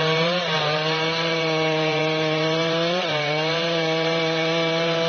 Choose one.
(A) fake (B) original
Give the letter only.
A